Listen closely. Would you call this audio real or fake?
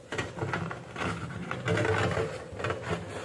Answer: real